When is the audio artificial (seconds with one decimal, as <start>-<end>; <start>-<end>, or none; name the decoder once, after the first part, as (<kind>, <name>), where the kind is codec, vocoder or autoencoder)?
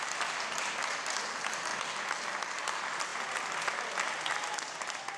none